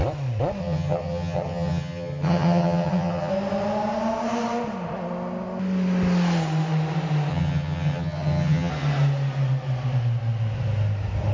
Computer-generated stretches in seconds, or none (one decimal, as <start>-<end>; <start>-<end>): 0.6-3.3; 7.3-8.7